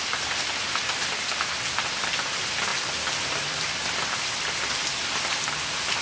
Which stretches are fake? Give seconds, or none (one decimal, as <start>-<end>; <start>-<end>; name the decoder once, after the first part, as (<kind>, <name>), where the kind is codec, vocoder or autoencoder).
none